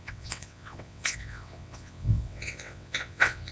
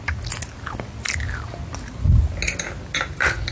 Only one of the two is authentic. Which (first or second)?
second